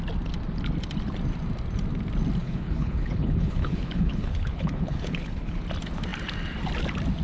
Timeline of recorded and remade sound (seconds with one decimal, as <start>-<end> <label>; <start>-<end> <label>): 0.0-2.4 recorded; 2.4-5.6 remade; 5.6-7.2 recorded